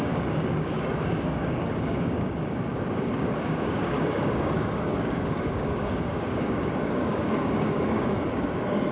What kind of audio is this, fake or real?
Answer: fake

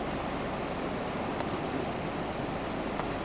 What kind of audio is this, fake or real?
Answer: real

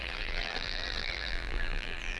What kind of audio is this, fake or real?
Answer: fake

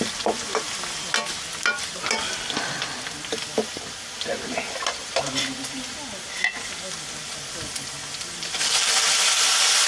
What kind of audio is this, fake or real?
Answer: real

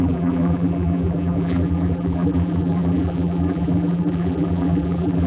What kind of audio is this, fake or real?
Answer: fake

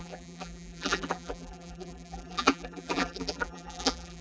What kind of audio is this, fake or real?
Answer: fake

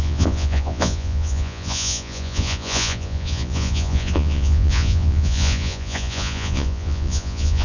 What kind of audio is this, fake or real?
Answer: fake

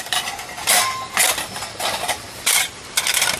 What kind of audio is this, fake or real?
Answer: fake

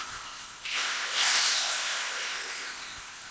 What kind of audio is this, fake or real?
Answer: fake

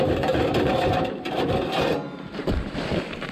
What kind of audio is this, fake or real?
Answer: fake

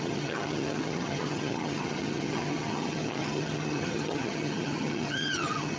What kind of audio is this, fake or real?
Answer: fake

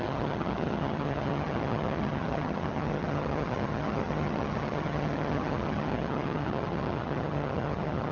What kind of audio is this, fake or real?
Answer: fake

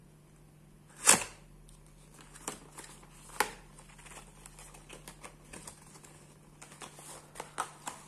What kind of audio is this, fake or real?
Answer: real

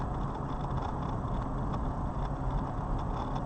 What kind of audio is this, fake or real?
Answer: real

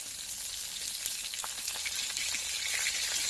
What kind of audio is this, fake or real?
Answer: real